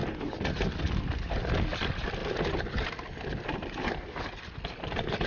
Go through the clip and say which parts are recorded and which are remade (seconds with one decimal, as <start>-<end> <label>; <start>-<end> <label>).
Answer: 0.0-5.3 recorded